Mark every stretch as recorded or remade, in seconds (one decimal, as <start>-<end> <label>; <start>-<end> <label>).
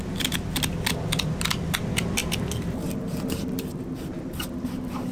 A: 0.0-5.1 recorded